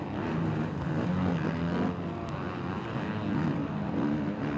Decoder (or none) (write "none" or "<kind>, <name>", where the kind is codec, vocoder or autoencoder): none